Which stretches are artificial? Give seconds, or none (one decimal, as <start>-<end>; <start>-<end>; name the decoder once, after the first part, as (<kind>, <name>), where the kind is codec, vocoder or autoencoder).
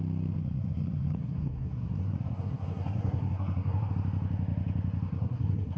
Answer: 0.4-3.9 (codec, SNAC); 5.1-5.8